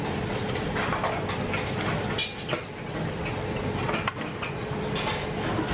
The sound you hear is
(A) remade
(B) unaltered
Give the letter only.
B